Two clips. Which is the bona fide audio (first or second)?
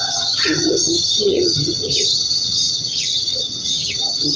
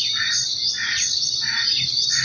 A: second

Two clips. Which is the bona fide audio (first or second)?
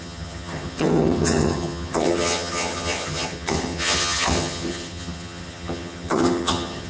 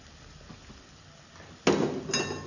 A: second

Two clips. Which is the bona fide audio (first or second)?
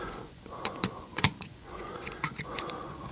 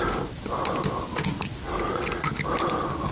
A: second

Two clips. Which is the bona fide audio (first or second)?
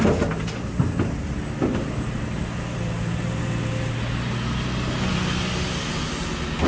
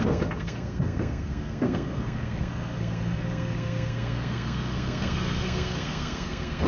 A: first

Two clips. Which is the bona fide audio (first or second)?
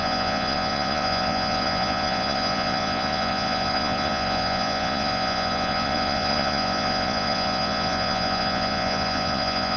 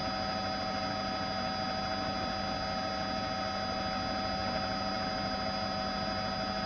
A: second